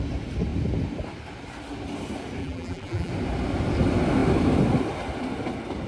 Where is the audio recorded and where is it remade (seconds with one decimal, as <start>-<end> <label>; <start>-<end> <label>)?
0.0-2.4 recorded; 2.4-3.1 remade; 3.1-5.9 recorded